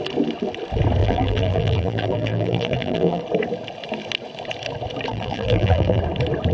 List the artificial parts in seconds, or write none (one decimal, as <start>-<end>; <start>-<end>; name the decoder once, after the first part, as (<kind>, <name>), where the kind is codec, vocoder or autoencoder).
1.0-3.2 (vocoder, BigVGAN v2); 5.1-6.0